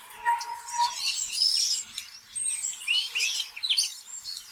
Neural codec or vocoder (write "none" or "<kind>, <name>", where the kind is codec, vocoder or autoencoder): none